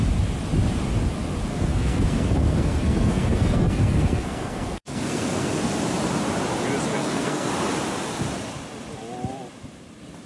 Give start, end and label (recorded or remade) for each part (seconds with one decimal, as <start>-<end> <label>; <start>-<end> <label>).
0.0-1.5 recorded; 1.5-5.7 remade; 5.7-6.9 recorded; 6.9-7.5 remade; 7.5-10.3 recorded